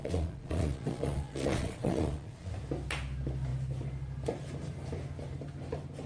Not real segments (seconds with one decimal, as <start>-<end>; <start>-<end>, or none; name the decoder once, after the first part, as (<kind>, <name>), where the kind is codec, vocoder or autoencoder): 0.0-2.5 (vocoder, Vocos)